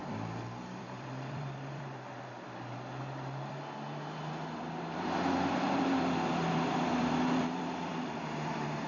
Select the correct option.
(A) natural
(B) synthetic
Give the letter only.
B